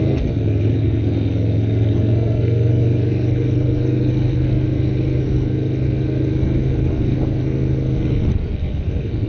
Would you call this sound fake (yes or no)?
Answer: yes